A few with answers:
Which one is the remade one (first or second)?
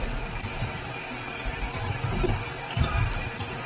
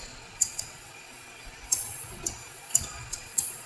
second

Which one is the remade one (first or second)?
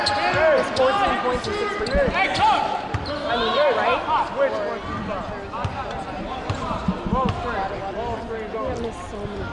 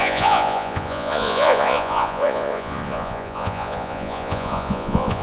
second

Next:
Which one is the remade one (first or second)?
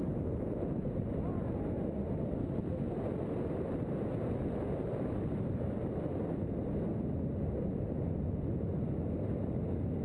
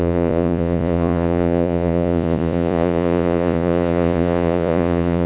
second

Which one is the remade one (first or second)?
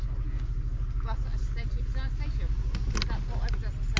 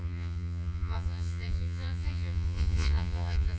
second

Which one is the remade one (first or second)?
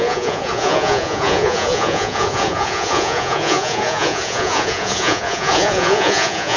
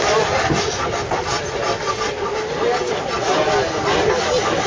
first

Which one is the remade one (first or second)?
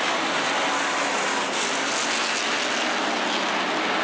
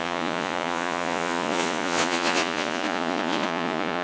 second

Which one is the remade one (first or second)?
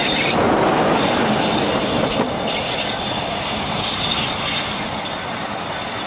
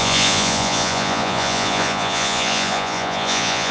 second